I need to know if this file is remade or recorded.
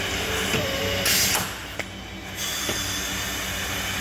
recorded